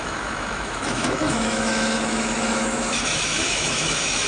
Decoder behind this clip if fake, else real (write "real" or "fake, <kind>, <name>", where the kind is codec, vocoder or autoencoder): fake, autoencoder, DAC-VAE